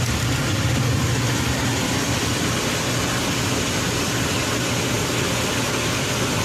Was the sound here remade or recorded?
recorded